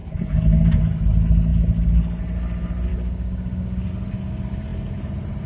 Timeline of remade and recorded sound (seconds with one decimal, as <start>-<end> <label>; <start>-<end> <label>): 0.0-2.9 recorded; 2.9-3.9 remade; 3.9-5.5 recorded